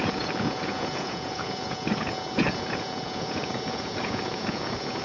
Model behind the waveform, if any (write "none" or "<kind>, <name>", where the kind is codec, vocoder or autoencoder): vocoder, Vocos